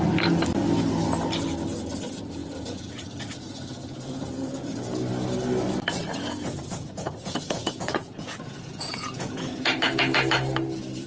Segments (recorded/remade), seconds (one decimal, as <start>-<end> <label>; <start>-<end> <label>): 0.0-2.4 recorded; 2.4-5.1 remade; 5.1-6.1 recorded; 6.1-10.0 remade; 10.0-11.1 recorded